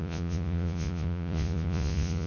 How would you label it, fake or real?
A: fake